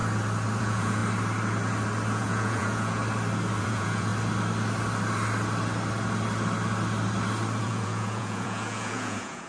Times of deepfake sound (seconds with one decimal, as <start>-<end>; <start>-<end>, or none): 0.6-1.0; 2.1-3.0; 3.6-4.1; 7.6-9.5